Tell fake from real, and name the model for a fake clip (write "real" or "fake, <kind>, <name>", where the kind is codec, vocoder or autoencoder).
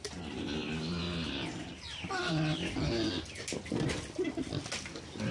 real